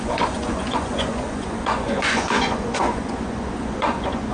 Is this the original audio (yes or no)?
no